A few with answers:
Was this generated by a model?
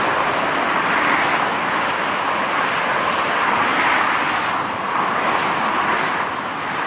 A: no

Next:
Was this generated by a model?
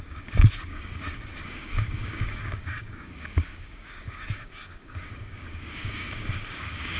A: yes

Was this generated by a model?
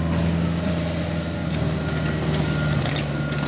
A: no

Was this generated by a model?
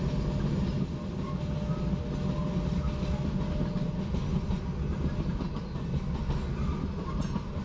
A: no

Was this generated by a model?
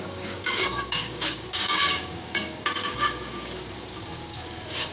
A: yes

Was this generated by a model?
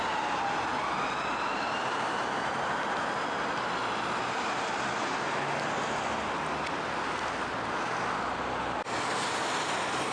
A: no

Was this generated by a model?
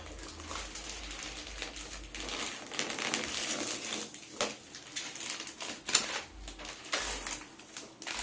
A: no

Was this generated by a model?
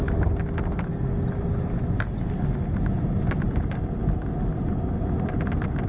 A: no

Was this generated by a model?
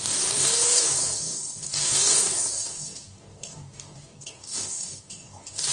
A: yes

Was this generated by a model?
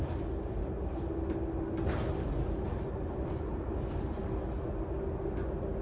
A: no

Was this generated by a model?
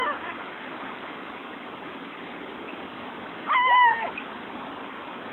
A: yes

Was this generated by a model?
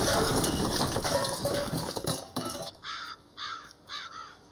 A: yes